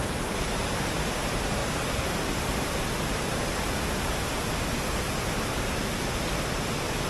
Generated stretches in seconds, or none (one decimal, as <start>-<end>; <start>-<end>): none